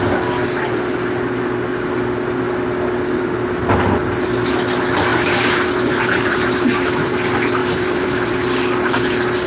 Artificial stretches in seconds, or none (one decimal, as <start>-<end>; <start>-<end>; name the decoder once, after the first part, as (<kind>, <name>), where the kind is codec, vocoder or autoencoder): 5.1-6.5 (vocoder, BigVGAN v2); 7.6-8.3